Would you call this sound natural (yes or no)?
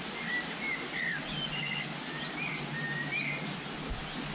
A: yes